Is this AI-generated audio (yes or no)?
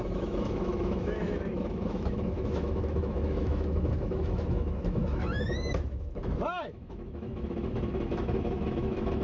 yes